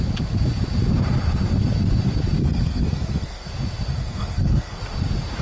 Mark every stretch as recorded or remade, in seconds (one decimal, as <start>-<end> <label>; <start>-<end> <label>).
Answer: 0.0-2.4 recorded; 2.4-3.5 remade; 3.5-3.9 recorded; 3.9-4.8 remade; 4.8-5.4 recorded